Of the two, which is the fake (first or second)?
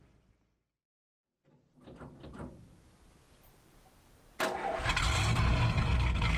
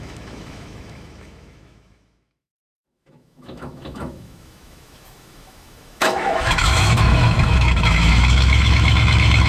second